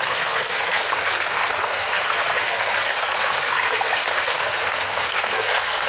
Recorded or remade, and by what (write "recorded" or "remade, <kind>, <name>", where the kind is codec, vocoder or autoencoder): remade, codec, SNAC